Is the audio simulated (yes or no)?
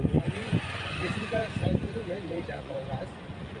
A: yes